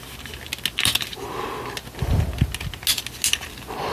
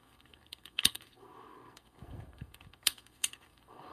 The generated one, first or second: second